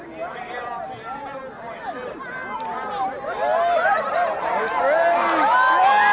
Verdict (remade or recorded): recorded